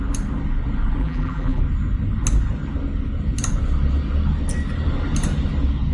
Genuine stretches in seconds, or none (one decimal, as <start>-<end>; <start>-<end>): 0.0-1.0; 1.6-5.9